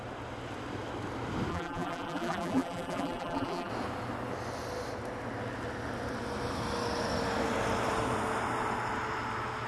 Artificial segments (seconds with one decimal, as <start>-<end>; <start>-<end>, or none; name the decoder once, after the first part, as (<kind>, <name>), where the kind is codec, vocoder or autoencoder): 1.5-3.7 (vocoder, BigVGAN v2)